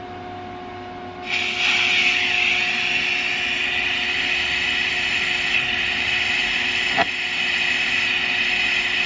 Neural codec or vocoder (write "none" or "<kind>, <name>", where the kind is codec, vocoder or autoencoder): none